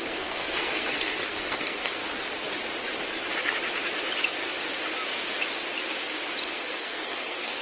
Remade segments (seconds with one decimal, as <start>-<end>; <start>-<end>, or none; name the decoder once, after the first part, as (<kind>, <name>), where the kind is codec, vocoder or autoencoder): 0.0-2.0 (codec, SNAC); 6.4-7.6